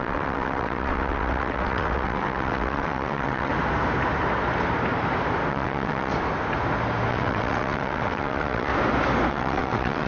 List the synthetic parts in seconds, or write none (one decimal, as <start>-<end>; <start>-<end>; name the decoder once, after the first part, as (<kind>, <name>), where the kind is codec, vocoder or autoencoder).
0.0-3.5 (vocoder, WaveNeXt); 5.5-6.1; 7.1-8.7; 9.3-10.1